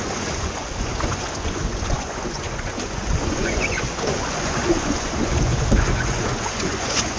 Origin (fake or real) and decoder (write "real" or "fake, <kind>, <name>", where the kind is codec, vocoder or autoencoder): fake, vocoder, Vocos